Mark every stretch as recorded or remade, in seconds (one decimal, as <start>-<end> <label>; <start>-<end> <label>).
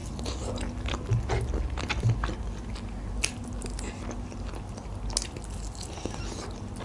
0.0-6.8 recorded